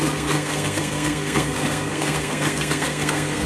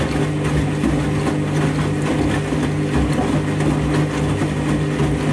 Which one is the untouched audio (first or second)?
second